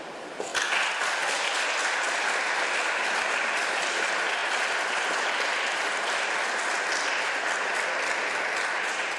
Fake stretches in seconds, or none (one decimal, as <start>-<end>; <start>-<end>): 0.0-0.5; 3.8-4.4; 4.9-5.5; 8.6-9.2